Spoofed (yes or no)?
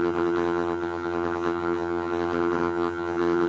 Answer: yes